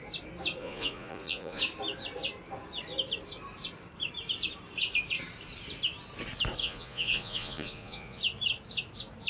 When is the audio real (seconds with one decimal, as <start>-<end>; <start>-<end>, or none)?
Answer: 0.0-0.6; 1.6-6.6; 8.2-9.3